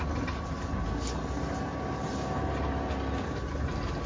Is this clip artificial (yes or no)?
no